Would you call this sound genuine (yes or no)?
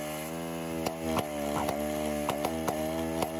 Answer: yes